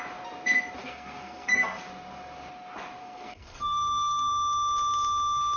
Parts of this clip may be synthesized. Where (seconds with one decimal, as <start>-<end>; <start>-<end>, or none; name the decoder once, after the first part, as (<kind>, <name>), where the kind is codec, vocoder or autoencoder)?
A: 0.8-1.8 (codec, SNAC); 3.0-4.3